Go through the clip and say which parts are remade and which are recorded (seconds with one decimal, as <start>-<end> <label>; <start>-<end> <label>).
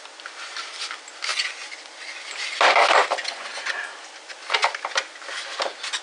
0.0-3.2 recorded; 3.2-3.7 remade; 3.7-6.0 recorded